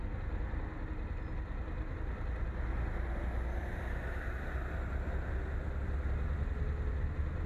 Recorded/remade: recorded